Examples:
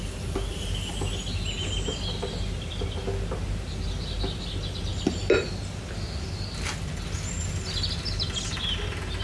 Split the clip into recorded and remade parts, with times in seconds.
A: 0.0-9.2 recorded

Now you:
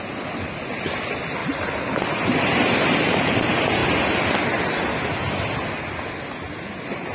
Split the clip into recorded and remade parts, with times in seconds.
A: 0.0-1.4 recorded; 1.4-2.4 remade; 2.4-7.1 recorded

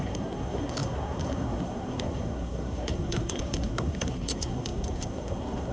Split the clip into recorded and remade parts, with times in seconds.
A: 0.0-5.7 remade

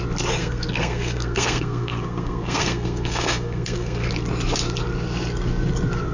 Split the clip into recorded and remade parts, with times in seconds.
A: 0.0-0.4 recorded; 0.4-4.1 remade; 4.1-6.1 recorded